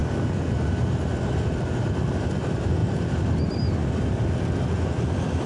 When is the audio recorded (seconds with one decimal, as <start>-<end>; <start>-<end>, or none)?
0.0-5.5